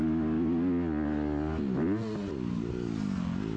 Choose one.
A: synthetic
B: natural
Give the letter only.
B